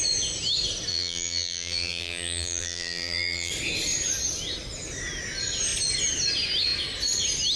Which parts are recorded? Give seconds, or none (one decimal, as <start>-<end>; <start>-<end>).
0.0-0.9; 3.5-7.6